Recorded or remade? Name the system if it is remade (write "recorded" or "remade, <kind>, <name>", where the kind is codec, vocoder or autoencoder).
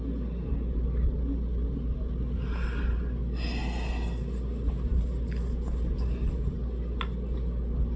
recorded